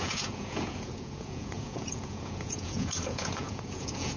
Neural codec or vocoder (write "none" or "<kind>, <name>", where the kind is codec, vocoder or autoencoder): vocoder, Vocos